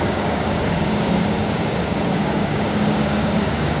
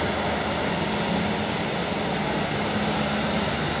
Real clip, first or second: second